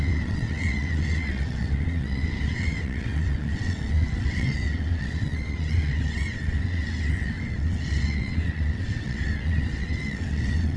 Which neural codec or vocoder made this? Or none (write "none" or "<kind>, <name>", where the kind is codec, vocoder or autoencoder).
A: vocoder, WaveNeXt